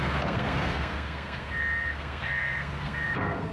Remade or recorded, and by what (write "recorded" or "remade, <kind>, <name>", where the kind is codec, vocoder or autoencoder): remade, codec, SNAC